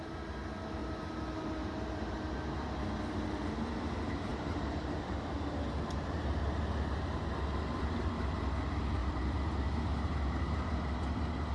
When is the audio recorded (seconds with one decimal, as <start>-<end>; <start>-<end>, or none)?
0.0-0.8; 2.2-4.3; 6.6-9.0; 10.7-11.5